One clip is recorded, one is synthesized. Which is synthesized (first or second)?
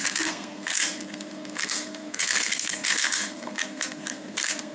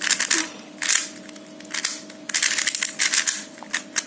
first